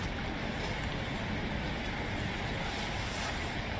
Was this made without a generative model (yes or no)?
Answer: yes